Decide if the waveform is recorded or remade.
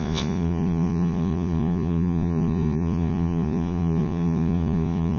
remade